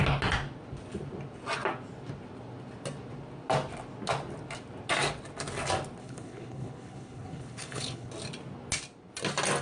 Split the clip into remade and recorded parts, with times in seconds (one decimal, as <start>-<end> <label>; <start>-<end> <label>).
0.0-6.0 recorded; 6.0-8.1 remade; 8.1-9.6 recorded